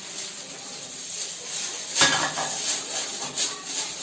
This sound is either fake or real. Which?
real